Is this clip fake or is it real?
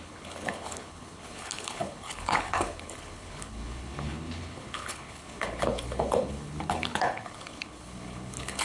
fake